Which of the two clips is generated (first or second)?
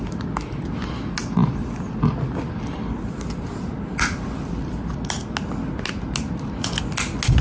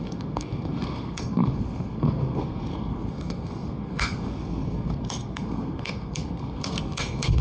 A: second